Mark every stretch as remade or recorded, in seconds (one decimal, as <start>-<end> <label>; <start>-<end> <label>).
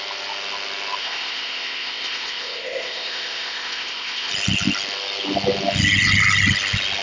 0.0-1.0 recorded; 1.0-4.3 remade; 4.3-7.0 recorded